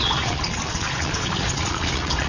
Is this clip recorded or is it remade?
remade